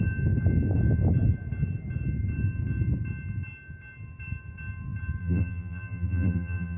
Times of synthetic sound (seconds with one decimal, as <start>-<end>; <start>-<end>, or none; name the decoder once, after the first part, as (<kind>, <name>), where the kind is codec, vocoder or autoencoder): 5.2-6.8 (vocoder, BigVGAN v2)